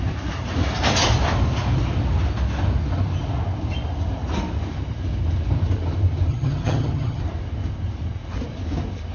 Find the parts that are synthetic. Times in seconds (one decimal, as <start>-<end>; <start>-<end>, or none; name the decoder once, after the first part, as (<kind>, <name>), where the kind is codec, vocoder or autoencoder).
6.3-7.2 (vocoder, HiFi-GAN)